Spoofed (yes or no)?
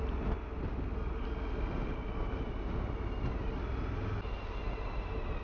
no